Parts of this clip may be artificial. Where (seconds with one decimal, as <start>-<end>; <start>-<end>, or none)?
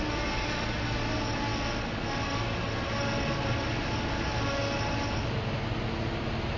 none